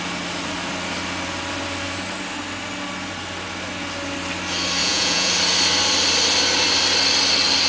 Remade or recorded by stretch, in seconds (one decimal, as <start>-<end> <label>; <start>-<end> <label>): 0.0-4.8 recorded; 4.8-5.3 remade; 5.3-7.7 recorded